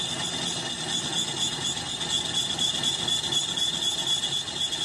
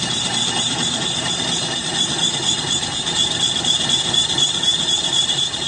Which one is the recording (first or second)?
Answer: first